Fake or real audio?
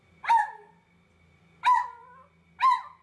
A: real